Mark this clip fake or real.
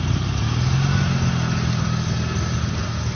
real